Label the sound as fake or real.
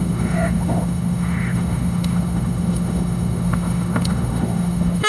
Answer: fake